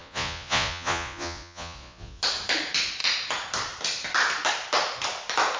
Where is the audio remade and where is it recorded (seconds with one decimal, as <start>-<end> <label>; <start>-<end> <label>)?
0.0-2.2 remade; 2.2-5.6 recorded